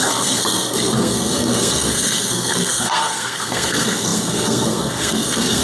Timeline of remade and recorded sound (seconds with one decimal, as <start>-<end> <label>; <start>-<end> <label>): 0.0-5.6 remade